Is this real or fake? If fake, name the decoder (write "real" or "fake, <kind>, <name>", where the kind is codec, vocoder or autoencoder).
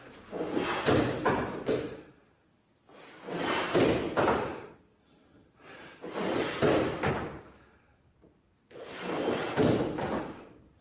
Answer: real